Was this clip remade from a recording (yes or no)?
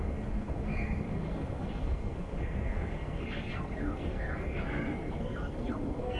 yes